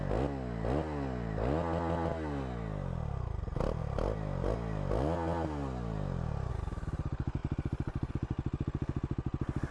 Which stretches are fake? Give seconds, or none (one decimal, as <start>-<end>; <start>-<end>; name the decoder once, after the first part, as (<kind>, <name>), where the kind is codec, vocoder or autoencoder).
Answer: none